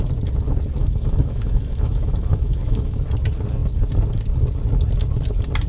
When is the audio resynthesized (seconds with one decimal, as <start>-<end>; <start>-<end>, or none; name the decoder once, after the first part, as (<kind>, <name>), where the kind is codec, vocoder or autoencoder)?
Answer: 0.8-3.0 (autoencoder, DAC-VAE)